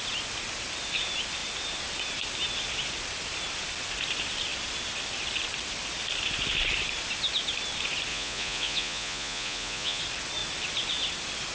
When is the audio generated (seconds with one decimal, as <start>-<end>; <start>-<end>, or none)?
8.1-10.0